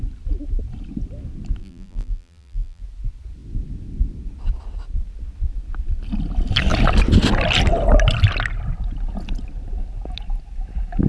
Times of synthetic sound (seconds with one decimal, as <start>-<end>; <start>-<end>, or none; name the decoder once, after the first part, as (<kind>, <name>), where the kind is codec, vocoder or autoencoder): 1.6-2.8 (vocoder, BigVGAN v2)